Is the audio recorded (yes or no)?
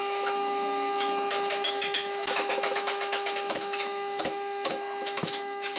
no